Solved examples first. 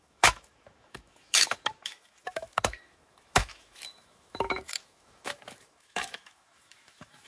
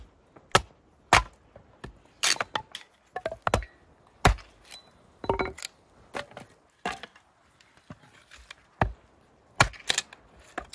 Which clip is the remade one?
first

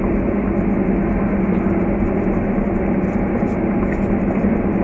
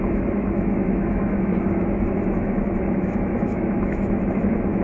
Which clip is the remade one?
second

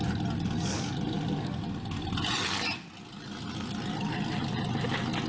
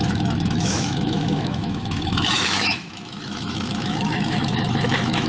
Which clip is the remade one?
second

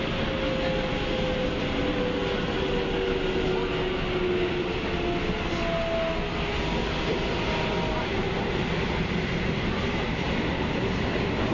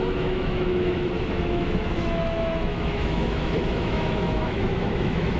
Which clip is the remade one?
second